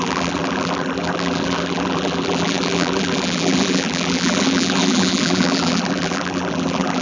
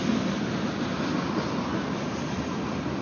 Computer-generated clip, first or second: first